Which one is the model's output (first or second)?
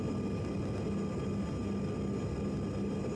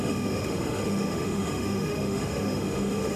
second